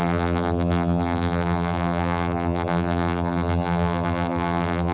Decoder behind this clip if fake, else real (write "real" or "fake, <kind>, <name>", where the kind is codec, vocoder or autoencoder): fake, vocoder, BigVGAN v2